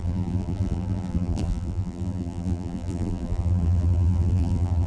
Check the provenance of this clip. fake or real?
fake